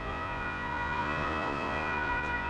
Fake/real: fake